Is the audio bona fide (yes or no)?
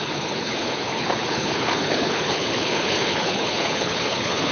no